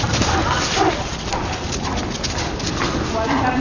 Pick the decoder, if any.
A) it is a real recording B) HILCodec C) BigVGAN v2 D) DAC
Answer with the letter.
A